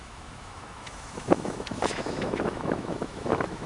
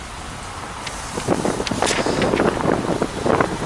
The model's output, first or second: first